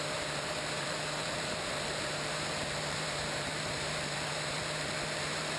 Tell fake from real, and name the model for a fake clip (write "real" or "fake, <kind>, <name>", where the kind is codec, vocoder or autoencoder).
fake, vocoder, BigVGAN v2